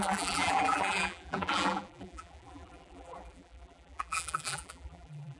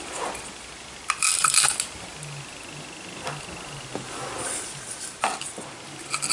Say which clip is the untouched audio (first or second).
second